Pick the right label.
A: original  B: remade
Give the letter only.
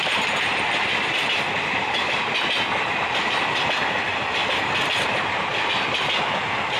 A